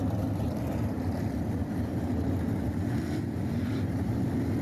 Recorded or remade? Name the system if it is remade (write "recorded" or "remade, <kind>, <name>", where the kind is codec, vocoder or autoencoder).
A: recorded